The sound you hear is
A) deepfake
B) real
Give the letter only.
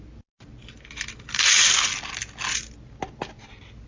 B